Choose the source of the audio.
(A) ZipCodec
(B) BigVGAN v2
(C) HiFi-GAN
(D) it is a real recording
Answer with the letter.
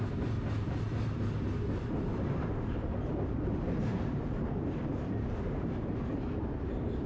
B